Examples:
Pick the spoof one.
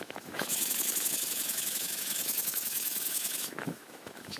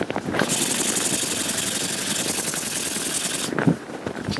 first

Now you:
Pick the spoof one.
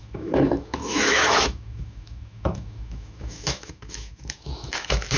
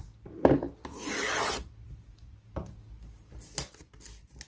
first